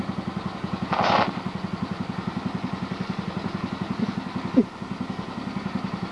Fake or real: real